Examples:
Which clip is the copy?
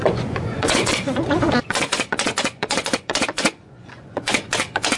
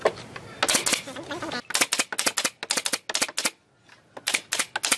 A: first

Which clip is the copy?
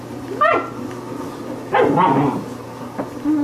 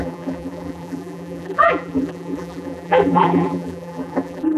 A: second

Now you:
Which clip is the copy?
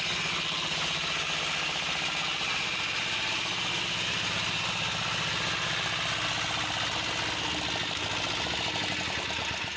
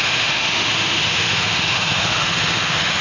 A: second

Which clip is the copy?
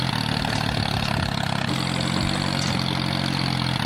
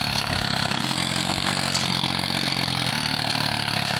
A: second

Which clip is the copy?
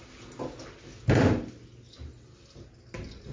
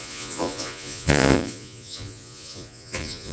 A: second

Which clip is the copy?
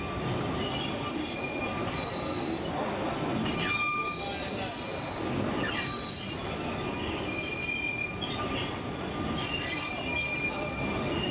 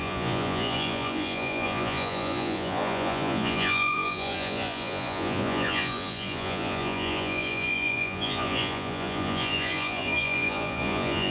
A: second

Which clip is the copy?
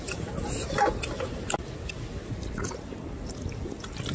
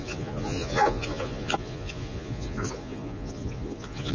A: second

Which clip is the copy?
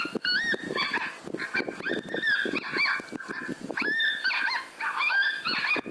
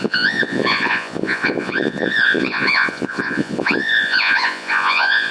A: second